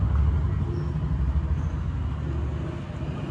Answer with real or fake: real